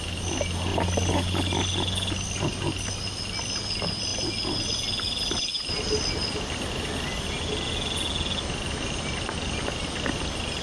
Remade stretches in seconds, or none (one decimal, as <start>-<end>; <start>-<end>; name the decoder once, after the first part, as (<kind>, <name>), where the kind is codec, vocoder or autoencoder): none